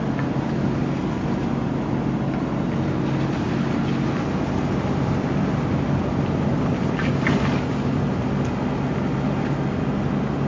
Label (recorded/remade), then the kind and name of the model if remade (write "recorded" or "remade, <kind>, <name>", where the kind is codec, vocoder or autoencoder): recorded